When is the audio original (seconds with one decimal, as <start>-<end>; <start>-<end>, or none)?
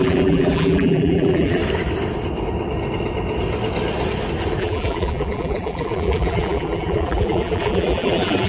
1.6-4.6